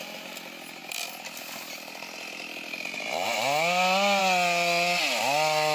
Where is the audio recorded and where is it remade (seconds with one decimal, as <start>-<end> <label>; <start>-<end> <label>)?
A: 0.0-5.7 recorded